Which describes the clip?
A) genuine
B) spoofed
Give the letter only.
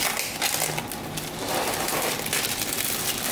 A